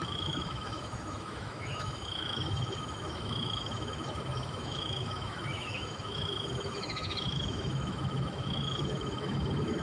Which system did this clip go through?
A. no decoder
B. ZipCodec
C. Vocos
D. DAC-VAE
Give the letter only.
D